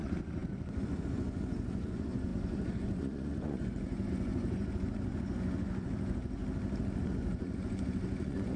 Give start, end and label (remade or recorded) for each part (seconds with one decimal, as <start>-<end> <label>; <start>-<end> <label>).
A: 0.0-6.4 remade; 6.4-7.0 recorded; 7.0-8.6 remade